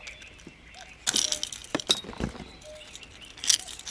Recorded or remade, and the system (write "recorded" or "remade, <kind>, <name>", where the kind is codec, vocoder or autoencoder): recorded